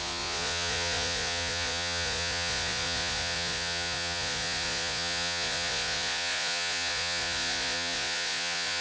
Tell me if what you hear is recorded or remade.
remade